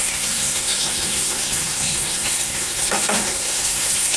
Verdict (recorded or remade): remade